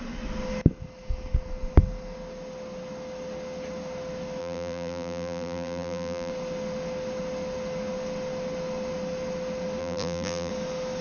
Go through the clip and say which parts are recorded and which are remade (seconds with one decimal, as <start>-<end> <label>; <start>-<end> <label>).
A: 0.0-4.4 recorded; 4.4-6.3 remade; 6.3-9.8 recorded; 9.8-10.5 remade; 10.5-11.0 recorded